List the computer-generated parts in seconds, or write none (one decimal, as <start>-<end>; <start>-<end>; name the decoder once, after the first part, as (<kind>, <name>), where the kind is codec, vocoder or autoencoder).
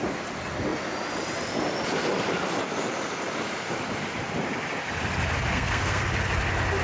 5.5-6.0 (codec, SNAC)